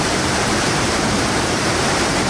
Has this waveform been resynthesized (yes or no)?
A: yes